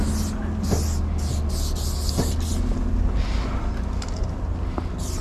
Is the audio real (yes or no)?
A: yes